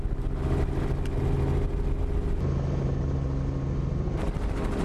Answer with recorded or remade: recorded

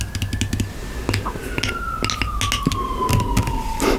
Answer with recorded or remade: recorded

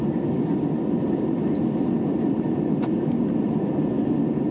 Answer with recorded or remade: recorded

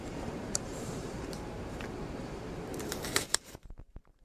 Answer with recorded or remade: remade